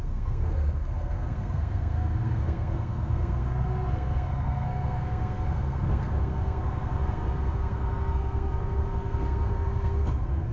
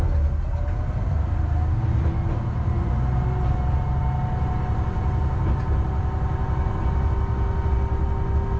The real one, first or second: second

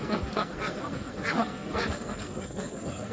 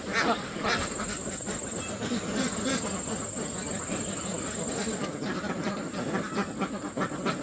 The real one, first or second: second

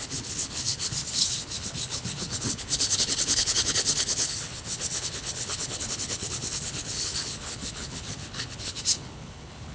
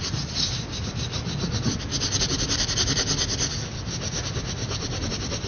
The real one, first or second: second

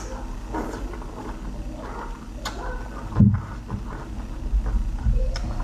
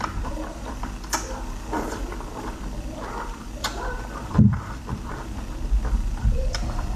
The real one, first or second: first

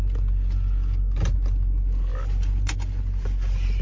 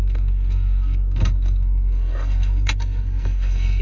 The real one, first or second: first